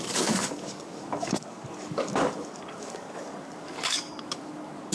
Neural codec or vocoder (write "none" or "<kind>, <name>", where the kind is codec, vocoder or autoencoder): codec, DAC